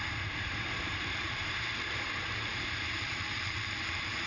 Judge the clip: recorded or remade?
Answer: remade